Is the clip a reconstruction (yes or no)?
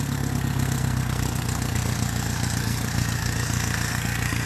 yes